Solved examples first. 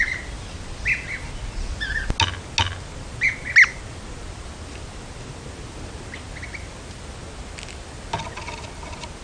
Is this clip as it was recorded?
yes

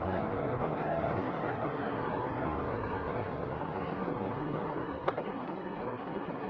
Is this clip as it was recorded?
no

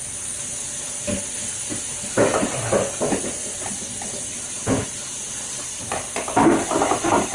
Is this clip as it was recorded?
yes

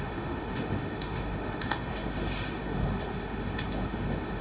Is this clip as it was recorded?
no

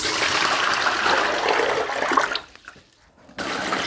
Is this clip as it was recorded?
yes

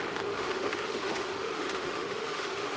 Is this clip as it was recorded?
no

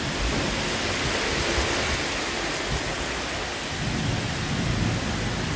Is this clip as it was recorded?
yes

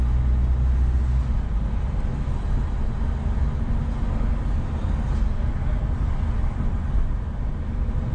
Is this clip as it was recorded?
yes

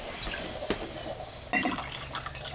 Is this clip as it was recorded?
yes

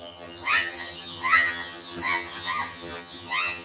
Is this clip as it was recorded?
no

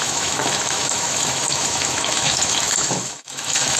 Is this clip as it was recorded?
no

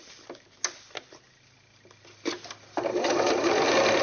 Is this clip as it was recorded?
yes